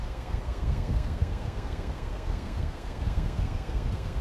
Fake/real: fake